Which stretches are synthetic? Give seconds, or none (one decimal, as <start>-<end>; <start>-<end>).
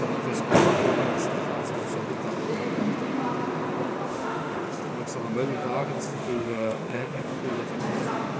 4.1-4.6; 6.1-7.4